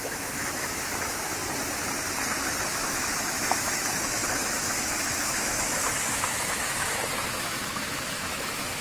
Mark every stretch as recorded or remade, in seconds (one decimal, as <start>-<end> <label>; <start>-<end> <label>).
0.0-1.4 remade; 1.4-2.6 recorded; 2.6-8.8 remade